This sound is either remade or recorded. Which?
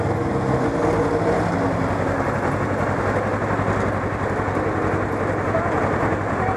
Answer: recorded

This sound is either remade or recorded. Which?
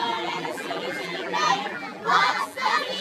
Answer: remade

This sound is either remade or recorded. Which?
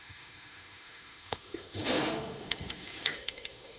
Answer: remade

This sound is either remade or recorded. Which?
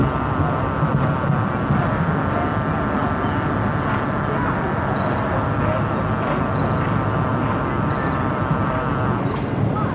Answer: recorded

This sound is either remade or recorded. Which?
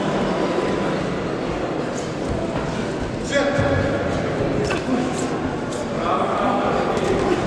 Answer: recorded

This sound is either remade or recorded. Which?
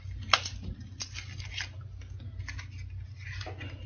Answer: recorded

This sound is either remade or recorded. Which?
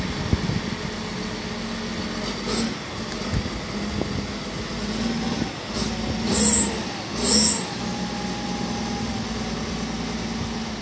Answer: recorded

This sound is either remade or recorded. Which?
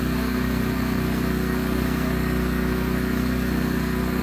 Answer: remade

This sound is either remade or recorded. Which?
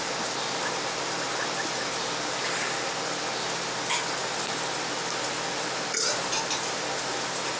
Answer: recorded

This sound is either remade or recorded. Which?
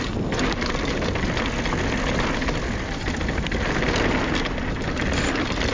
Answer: recorded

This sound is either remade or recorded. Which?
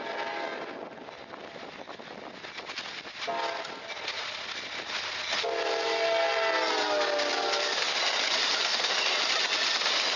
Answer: recorded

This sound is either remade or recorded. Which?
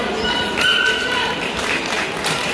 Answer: recorded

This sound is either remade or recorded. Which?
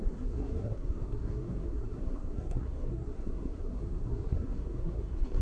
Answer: remade